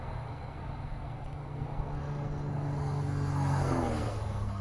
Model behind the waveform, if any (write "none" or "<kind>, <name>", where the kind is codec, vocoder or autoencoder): codec, SNAC